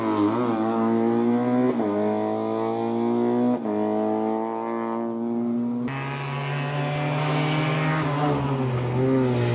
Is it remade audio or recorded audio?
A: recorded